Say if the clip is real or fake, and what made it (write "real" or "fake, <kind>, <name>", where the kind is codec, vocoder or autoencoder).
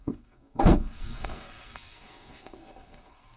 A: fake, codec, SNAC